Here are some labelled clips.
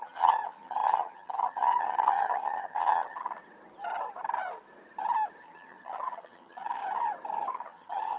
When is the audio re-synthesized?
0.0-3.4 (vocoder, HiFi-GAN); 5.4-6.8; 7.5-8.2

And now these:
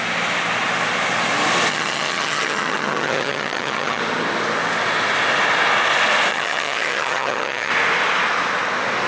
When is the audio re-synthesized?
1.7-4.0 (vocoder, HiFi-GAN); 6.3-7.7

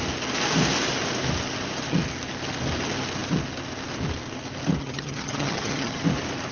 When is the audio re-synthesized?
4.8-6.0 (vocoder, HiFi-GAN)

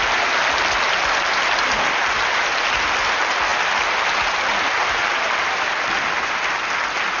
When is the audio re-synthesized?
none

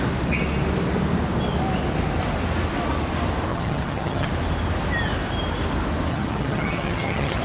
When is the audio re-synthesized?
3.5-4.3 (vocoder, HiFi-GAN); 6.1-7.4

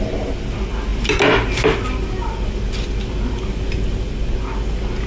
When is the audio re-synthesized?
none